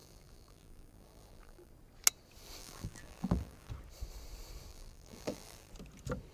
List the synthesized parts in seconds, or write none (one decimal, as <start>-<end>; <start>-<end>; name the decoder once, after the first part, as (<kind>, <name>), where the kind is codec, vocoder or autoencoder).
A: 0.0-1.7 (vocoder, BigVGAN v2); 2.6-3.7; 4.7-5.7